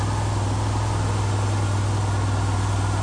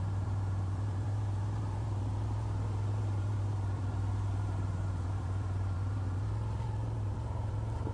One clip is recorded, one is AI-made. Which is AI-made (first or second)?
second